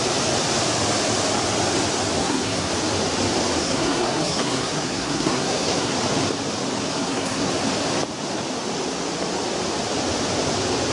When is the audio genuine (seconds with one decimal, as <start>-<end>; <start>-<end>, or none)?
0.0-2.2; 2.7-3.6; 5.9-6.9; 7.5-10.9